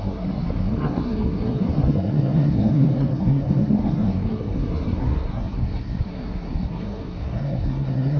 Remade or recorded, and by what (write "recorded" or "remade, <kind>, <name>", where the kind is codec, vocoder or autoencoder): remade, codec, SNAC